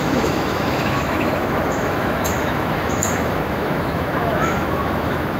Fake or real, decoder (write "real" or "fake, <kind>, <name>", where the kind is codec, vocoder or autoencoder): fake, autoencoder, DAC-VAE